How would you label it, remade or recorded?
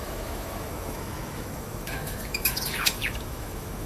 remade